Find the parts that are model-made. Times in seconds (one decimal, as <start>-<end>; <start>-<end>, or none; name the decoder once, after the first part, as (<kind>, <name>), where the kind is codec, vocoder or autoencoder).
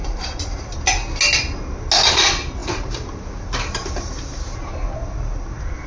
0.0-0.6 (vocoder, BigVGAN v2); 2.6-4.7